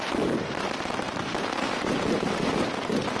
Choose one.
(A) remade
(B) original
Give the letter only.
A